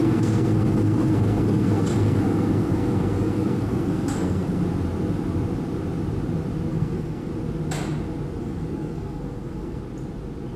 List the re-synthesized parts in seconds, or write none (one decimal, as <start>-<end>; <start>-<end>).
0.0-4.6; 6.7-7.3; 8.4-9.8